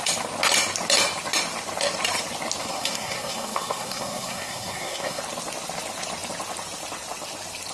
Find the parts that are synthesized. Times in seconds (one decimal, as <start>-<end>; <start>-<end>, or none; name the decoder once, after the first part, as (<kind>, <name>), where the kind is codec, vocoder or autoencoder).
2.6-5.2 (codec, SNAC)